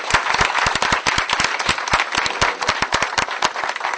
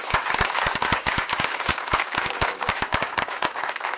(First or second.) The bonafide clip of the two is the first